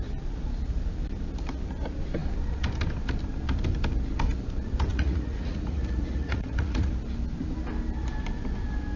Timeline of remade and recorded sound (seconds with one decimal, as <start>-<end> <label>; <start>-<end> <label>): 0.0-4.9 recorded; 4.9-6.9 remade; 6.9-9.0 recorded